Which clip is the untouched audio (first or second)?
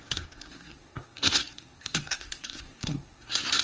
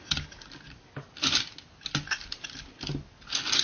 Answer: second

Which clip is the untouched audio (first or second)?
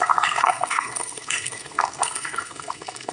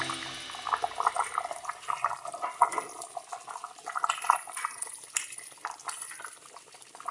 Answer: second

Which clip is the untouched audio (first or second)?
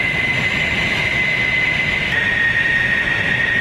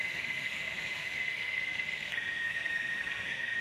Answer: first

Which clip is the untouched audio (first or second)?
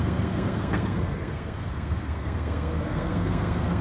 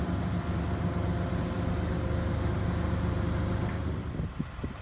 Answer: second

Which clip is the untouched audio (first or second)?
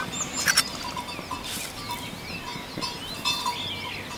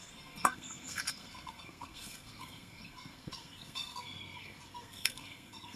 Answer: first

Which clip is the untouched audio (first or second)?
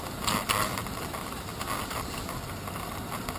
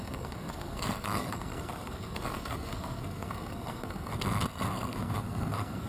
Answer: first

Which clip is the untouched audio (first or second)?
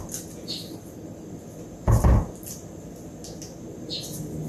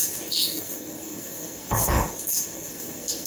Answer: first